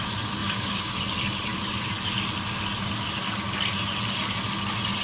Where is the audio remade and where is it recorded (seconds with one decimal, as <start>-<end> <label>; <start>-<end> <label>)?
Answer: 0.0-0.4 recorded; 0.4-1.0 remade; 1.0-5.0 recorded